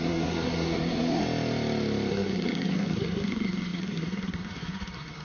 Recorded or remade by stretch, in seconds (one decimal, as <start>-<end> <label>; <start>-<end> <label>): 0.0-1.2 remade; 1.2-2.1 recorded; 2.1-5.2 remade